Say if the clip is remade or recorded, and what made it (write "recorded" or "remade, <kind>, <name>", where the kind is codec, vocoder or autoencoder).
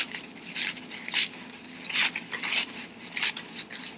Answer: recorded